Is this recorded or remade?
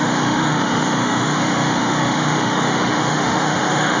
remade